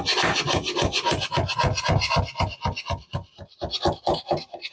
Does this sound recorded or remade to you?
recorded